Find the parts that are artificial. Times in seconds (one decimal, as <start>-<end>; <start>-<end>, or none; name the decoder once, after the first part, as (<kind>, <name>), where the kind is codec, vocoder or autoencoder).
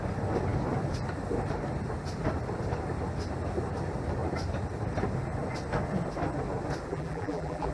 6.9-7.7 (vocoder, BigVGAN v2)